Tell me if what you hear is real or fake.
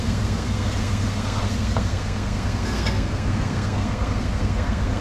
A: fake